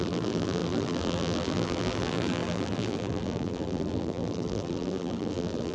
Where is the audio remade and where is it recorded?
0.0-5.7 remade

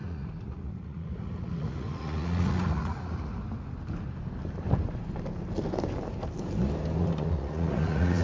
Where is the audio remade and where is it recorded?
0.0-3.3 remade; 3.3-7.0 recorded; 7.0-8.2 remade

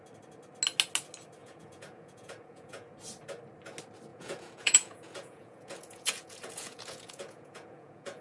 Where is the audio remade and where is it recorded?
0.0-1.4 recorded; 1.4-2.9 remade; 2.9-4.1 recorded; 4.1-8.2 remade